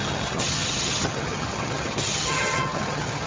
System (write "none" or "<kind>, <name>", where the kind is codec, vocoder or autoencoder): vocoder, HiFi-GAN